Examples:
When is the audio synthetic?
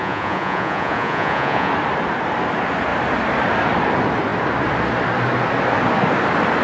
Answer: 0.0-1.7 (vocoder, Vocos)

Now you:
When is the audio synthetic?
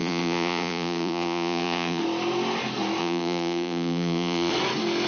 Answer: 0.0-2.0 (vocoder, Vocos); 3.0-4.5